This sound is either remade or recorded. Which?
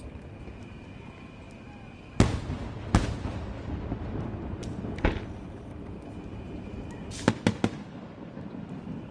recorded